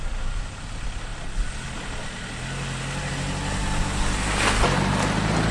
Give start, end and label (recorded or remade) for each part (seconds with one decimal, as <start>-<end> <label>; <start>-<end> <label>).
0.0-5.5 recorded